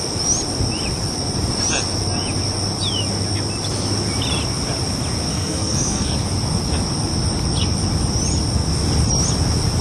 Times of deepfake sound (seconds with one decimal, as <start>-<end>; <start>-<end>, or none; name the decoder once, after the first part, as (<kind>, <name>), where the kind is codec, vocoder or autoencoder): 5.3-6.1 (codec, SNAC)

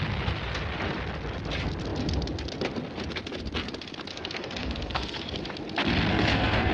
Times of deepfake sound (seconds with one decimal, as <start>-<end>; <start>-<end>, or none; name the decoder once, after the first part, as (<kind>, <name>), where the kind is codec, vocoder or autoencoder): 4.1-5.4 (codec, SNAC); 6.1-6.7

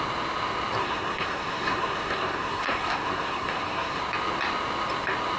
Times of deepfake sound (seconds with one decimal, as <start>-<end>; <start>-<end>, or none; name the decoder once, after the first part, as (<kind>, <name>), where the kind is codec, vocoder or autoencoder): 0.8-4.0 (codec, SNAC)

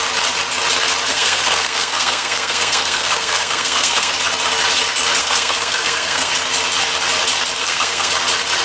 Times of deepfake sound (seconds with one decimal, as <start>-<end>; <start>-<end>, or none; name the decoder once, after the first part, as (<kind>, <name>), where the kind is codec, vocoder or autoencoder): 1.1-4.1 (codec, SNAC); 5.2-6.3; 7.6-8.1